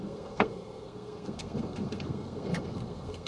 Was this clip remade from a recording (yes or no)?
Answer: yes